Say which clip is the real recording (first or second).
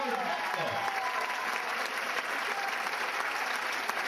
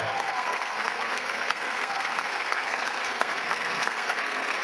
first